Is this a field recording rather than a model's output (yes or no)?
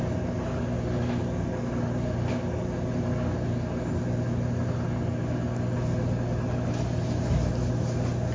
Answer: yes